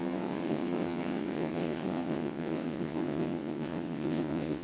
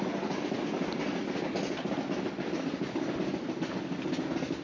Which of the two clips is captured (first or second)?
second